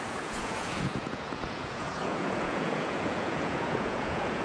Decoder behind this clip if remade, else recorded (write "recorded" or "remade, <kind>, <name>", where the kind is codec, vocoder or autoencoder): remade, vocoder, Vocos